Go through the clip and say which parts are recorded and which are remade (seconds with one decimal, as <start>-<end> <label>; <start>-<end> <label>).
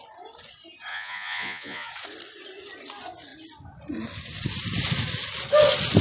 0.0-0.9 recorded; 0.9-1.9 remade; 1.9-6.0 recorded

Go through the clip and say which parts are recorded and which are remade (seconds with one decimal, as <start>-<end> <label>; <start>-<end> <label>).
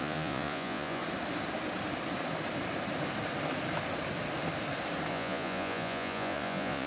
0.0-1.0 remade; 1.0-5.1 recorded; 5.1-6.9 remade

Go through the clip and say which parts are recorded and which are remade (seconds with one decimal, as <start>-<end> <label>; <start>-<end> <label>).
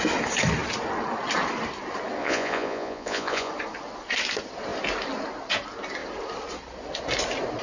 0.0-2.2 recorded; 2.2-3.5 remade; 3.5-7.6 recorded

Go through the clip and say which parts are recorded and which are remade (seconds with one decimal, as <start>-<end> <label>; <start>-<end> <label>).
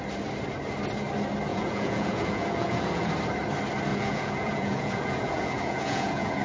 0.0-1.5 recorded; 1.5-3.1 remade; 3.1-3.9 recorded; 3.9-6.4 remade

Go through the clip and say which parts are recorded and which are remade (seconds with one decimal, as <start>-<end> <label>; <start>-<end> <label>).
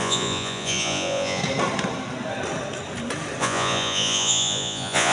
0.0-1.4 remade; 1.4-3.4 recorded; 3.4-5.1 remade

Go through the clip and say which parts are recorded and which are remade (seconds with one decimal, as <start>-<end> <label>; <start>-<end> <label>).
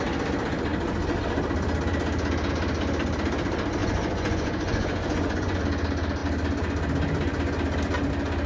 0.0-3.8 recorded; 3.8-5.6 remade; 5.6-8.5 recorded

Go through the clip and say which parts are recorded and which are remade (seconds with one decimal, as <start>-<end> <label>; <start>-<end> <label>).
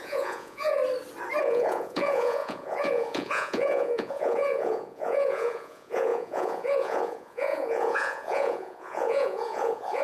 0.0-0.8 remade; 0.8-1.4 recorded; 1.4-10.0 remade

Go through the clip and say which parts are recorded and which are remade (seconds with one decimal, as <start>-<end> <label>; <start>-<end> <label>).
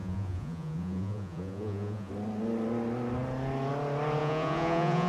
0.0-2.1 remade; 2.1-4.2 recorded; 4.2-5.1 remade